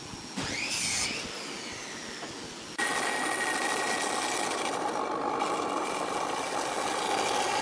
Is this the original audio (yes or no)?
yes